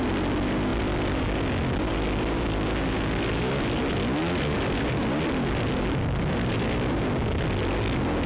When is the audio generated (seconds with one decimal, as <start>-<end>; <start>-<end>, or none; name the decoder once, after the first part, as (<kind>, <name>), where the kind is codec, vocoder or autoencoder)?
none